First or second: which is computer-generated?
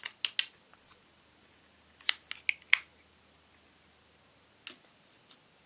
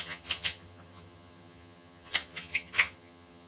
second